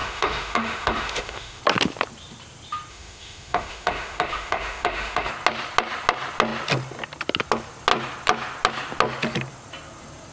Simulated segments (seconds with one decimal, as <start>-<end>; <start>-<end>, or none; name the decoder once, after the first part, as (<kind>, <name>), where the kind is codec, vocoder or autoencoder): 0.0-1.6 (autoencoder, DAC-VAE); 2.9-5.3